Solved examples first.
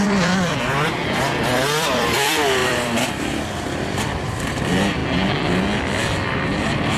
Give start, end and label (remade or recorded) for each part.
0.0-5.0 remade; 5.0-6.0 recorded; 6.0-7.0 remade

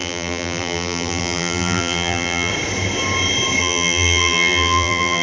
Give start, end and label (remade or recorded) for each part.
0.0-2.5 remade; 2.5-3.6 recorded; 3.6-5.2 remade

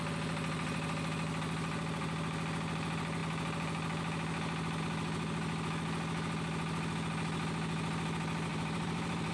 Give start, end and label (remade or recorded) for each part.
0.0-8.5 recorded; 8.5-9.3 remade

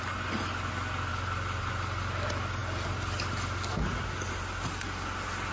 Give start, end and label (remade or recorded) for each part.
0.0-1.1 recorded; 1.1-1.7 remade; 1.7-5.5 recorded